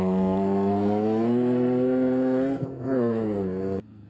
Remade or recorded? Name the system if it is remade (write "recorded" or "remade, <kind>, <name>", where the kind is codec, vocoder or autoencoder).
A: remade, codec, SNAC